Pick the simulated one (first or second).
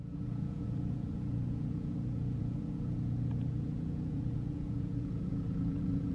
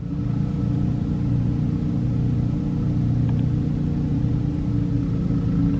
first